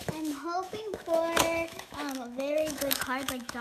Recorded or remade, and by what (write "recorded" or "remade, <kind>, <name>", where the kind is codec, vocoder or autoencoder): remade, autoencoder, DAC-VAE